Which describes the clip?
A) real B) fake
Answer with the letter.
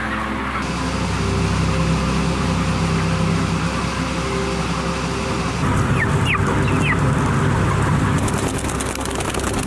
A